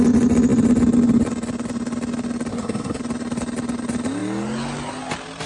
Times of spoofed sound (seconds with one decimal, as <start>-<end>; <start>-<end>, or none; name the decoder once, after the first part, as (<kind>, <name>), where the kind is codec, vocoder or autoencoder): 2.5-3.0 (codec, SNAC)